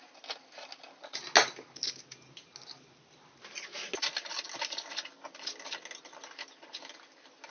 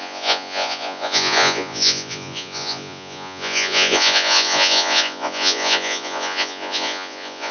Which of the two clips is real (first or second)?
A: first